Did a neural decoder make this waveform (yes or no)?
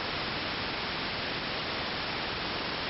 no